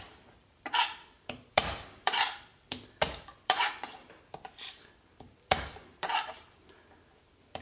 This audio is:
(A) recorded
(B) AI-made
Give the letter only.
B